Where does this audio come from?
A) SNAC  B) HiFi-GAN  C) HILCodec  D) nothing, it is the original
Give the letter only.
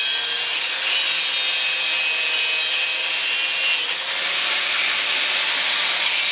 D